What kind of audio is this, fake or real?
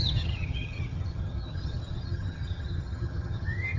fake